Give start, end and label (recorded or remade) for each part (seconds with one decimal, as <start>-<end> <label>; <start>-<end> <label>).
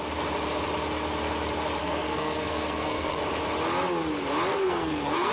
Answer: 0.0-1.8 recorded; 1.8-3.2 remade; 3.2-4.5 recorded; 4.5-5.3 remade